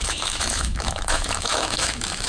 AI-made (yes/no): yes